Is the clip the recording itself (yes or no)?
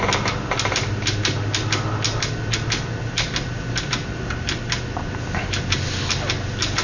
yes